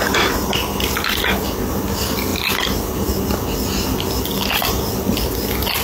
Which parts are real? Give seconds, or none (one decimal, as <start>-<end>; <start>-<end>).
0.0-5.8